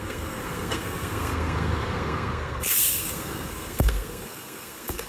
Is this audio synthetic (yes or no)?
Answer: yes